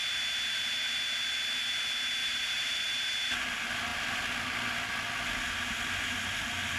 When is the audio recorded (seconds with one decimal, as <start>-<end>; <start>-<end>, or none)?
0.0-2.2; 2.8-6.8

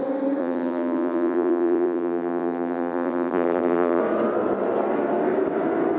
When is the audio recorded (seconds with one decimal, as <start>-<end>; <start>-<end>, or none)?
0.0-0.4; 4.0-6.0

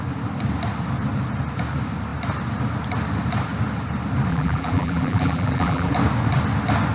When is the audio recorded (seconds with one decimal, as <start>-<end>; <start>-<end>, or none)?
0.0-4.3; 5.9-6.9